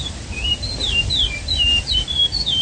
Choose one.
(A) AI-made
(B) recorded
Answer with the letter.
B